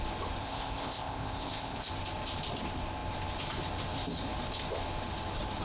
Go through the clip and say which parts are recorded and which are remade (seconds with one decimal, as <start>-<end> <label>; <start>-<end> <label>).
0.0-0.4 recorded; 0.4-1.9 remade; 1.9-5.6 recorded